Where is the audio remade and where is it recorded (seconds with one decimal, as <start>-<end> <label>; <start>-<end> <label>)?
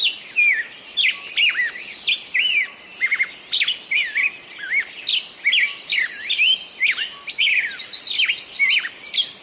0.0-9.4 recorded